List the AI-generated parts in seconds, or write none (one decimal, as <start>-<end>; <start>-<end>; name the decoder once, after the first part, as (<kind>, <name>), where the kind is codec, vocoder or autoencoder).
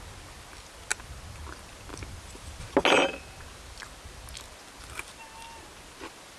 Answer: none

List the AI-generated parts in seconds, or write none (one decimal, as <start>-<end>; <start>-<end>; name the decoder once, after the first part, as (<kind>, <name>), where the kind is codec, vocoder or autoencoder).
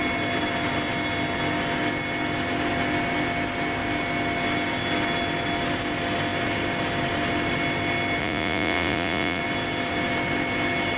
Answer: 8.2-9.4 (vocoder, Vocos)